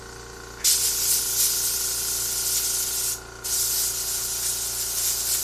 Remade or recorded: recorded